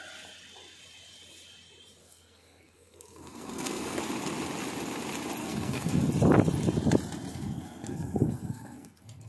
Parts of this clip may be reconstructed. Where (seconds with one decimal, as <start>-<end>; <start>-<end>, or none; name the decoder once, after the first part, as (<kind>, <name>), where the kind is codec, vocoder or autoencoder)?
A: 2.0-4.0 (codec, SNAC); 5.4-6.1; 7.3-9.3